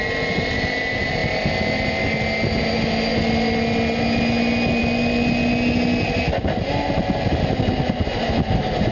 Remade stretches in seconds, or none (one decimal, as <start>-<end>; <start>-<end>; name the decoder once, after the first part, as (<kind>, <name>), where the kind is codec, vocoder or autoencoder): none